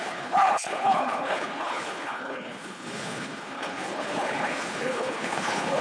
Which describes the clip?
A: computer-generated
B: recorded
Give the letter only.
A